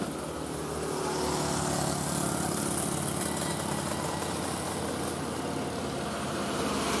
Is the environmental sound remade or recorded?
recorded